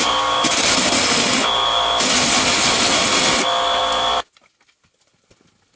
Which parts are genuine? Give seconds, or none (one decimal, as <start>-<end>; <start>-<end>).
0.0-5.8